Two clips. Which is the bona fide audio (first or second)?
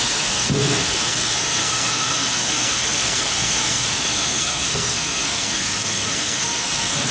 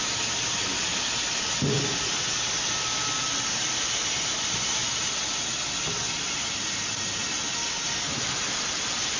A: second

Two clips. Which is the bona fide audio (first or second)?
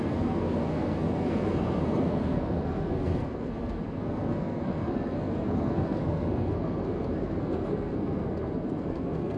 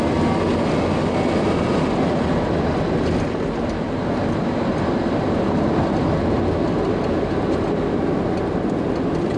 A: second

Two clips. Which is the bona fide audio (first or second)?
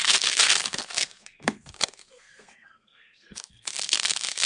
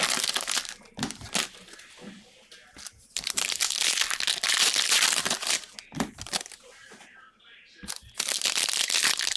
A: second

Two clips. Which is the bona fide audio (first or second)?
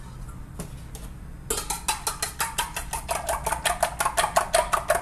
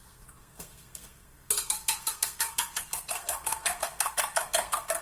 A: first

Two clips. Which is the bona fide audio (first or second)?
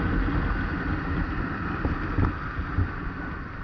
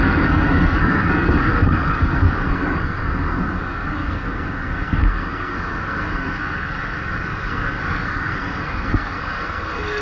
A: first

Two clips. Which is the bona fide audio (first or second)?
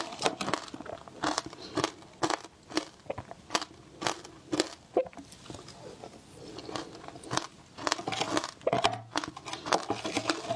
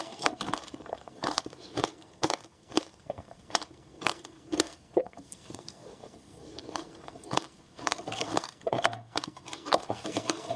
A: first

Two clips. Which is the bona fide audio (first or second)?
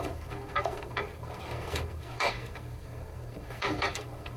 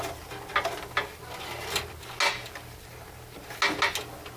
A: second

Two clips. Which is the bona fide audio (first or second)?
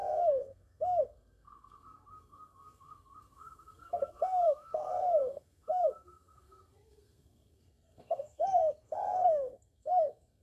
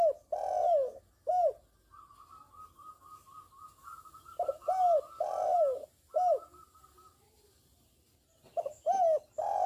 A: second